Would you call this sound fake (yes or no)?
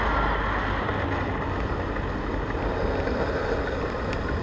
no